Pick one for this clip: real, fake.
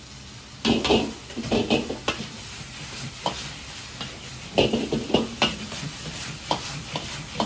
real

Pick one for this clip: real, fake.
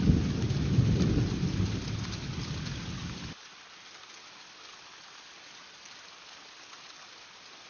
real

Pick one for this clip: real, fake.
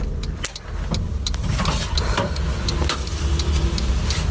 real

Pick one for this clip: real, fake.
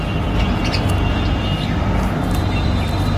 real